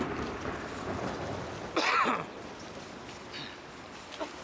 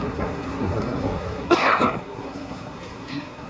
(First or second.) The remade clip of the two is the second